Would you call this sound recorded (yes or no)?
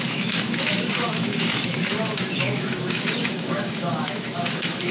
no